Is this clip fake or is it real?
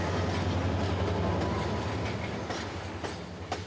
real